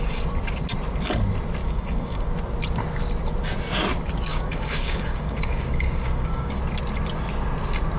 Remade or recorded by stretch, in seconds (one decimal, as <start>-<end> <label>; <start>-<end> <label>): 0.0-1.6 recorded; 1.6-2.3 remade; 2.3-4.3 recorded; 4.3-6.6 remade; 6.6-8.0 recorded